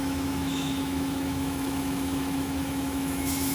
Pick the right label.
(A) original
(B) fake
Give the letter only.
B